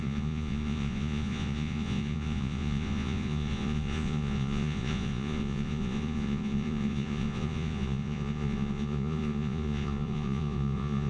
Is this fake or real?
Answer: fake